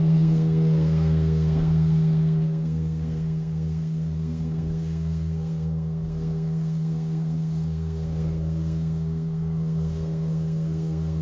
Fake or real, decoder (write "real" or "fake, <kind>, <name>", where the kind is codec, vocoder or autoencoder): fake, codec, SNAC